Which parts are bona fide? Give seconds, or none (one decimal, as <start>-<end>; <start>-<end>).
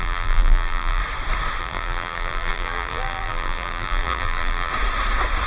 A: 1.0-1.6; 4.7-5.5